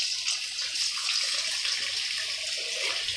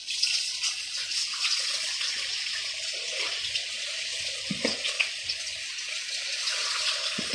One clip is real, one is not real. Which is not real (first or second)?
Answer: second